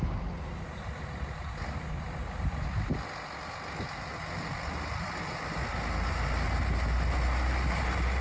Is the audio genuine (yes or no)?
yes